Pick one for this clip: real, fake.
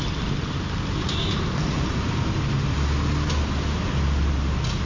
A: real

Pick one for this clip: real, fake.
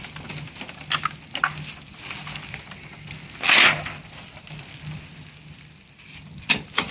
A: real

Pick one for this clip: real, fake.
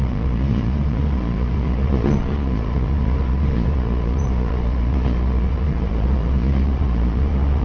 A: fake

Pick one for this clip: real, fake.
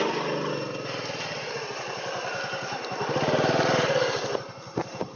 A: real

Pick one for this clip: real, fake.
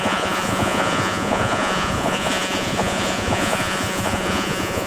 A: fake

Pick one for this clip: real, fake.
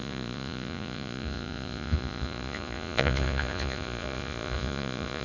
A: fake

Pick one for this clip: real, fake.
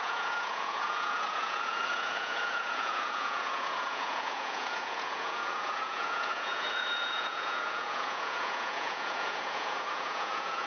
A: fake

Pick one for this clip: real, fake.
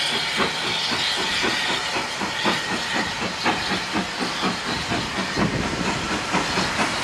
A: real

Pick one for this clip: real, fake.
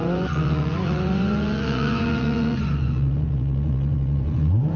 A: fake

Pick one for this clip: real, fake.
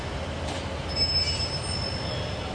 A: real